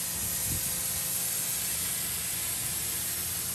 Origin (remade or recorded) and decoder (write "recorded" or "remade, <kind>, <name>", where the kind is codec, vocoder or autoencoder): recorded